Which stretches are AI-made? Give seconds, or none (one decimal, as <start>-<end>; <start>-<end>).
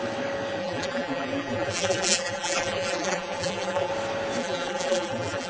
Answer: 0.6-3.9; 4.4-5.5